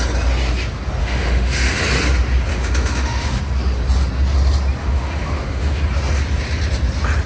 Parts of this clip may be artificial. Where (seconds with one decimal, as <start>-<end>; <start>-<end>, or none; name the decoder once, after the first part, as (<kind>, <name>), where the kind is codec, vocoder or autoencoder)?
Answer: 1.0-1.8 (autoencoder, DAC-VAE); 2.5-3.4; 4.8-5.8